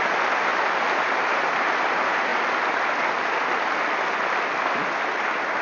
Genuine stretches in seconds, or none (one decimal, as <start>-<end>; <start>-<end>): 0.0-0.5; 1.6-5.6